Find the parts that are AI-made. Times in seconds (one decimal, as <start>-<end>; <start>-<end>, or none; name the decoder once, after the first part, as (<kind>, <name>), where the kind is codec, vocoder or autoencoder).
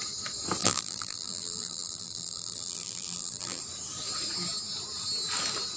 0.6-3.6 (vocoder, BigVGAN v2)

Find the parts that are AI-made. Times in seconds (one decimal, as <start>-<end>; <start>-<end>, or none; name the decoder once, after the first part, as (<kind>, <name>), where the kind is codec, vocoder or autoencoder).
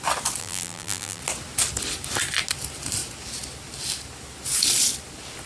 0.4-1.2 (vocoder, BigVGAN v2)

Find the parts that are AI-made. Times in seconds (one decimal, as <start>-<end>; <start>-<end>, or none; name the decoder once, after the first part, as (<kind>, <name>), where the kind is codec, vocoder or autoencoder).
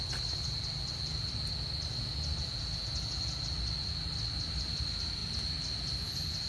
none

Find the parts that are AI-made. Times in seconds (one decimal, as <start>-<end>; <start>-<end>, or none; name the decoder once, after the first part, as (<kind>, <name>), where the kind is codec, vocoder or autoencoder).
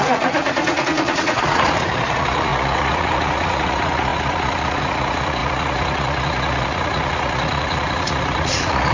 0.0-8.9 (vocoder, Vocos)